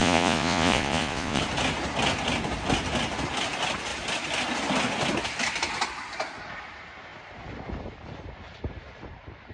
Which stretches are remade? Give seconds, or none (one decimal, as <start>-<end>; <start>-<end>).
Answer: 0.0-1.4